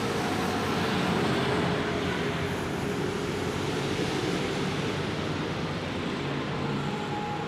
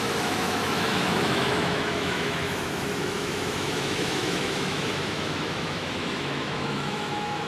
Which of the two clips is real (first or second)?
first